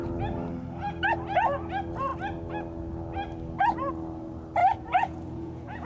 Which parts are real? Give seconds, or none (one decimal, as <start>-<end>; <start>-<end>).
0.0-4.6